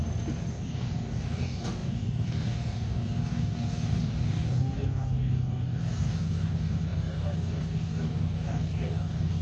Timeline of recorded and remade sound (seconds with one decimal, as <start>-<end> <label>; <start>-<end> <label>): 0.0-0.5 recorded; 0.5-9.4 remade

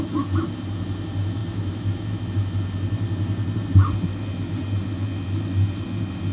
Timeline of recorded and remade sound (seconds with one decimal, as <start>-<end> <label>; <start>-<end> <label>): 0.0-1.4 recorded; 1.4-2.1 remade; 2.1-6.3 recorded